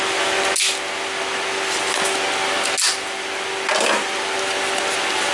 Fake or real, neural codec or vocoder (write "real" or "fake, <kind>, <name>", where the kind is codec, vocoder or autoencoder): real